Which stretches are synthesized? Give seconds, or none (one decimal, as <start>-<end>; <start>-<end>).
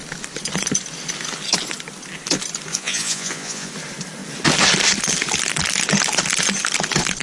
2.7-3.7